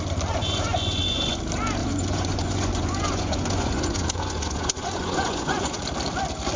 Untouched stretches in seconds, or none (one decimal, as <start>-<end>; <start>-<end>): 0.0-0.4; 1.4-1.8; 5.8-6.6